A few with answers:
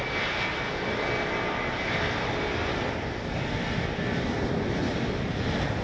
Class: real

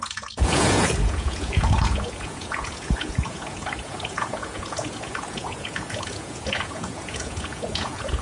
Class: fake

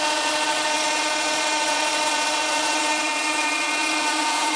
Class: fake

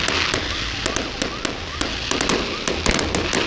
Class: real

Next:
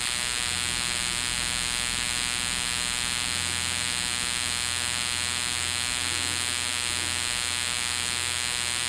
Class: real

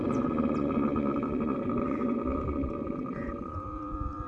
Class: fake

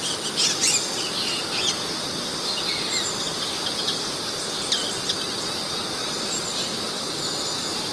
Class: real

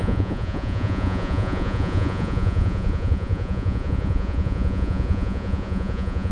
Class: fake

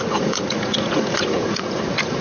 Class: fake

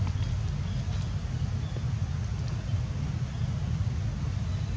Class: real